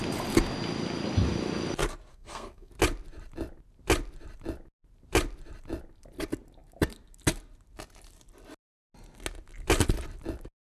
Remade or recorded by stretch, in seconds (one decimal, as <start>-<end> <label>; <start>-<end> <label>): 0.0-2.1 recorded; 2.1-2.7 remade; 2.7-10.7 recorded